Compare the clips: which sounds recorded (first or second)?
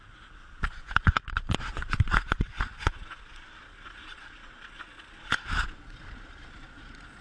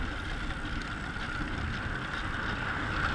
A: second